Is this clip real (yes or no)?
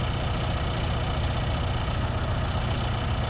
yes